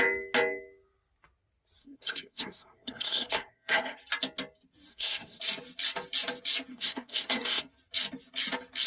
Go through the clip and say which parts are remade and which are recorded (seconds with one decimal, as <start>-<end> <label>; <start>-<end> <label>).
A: 0.0-1.8 recorded; 1.8-4.0 remade; 4.0-4.9 recorded; 4.9-5.4 remade; 5.4-6.7 recorded; 6.7-7.6 remade; 7.6-8.9 recorded